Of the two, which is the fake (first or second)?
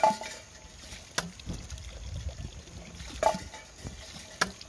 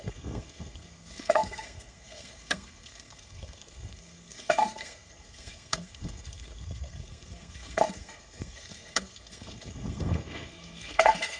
second